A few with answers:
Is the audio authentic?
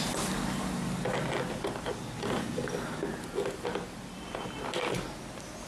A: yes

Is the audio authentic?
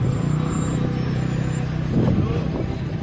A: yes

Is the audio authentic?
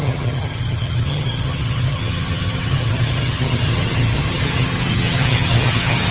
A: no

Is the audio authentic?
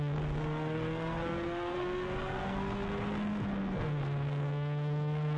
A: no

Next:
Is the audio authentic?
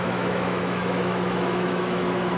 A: no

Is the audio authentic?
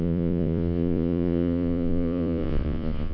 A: no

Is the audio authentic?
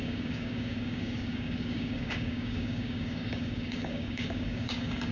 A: no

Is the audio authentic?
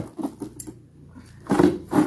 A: yes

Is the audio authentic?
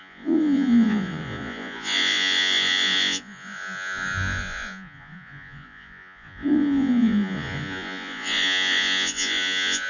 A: no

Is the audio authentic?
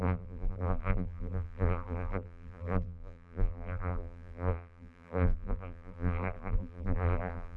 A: no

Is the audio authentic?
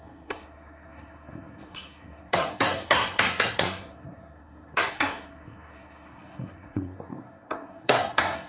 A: no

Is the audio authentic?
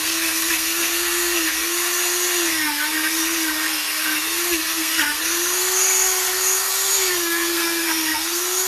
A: no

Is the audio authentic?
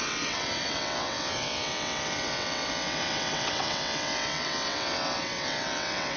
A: no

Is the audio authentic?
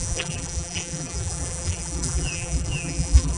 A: no